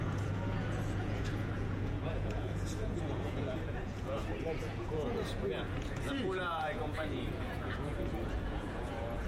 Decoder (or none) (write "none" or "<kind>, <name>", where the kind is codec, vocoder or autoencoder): vocoder, Vocos